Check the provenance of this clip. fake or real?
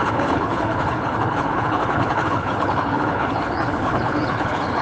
fake